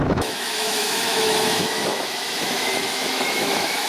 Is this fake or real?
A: fake